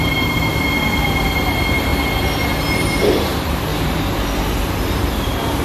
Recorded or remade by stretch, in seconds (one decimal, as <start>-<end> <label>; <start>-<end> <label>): 0.0-0.5 remade; 0.5-1.5 recorded; 1.5-1.9 remade; 1.9-2.7 recorded; 2.7-5.6 remade